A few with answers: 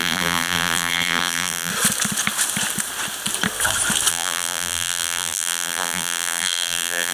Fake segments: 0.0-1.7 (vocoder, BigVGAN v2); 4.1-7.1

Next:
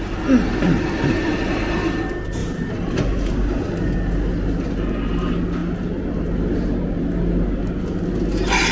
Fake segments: 0.5-1.2 (vocoder, BigVGAN v2); 2.4-3.6

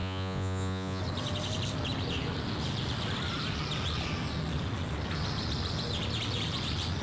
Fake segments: 0.0-1.0 (vocoder, Vocos)

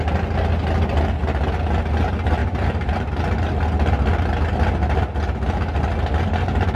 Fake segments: 2.4-3.1 (vocoder, BigVGAN v2)

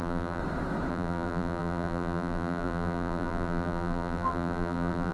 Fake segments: 0.0-0.4 (vocoder, BigVGAN v2); 0.9-5.1

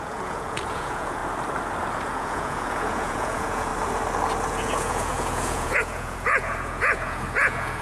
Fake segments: 0.0-1.2 (vocoder, Vocos); 2.0-3.7; 4.5-7.8

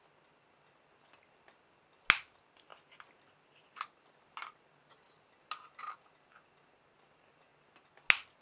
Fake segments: none

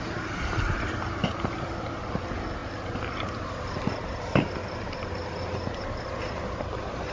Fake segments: none